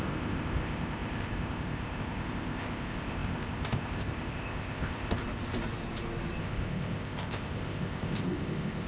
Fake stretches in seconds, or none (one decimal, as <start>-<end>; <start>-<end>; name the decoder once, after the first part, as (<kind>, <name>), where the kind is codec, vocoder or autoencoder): 0.0-5.2 (codec, ZipCodec); 6.4-8.9